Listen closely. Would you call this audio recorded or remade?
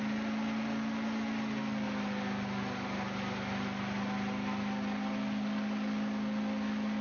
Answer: recorded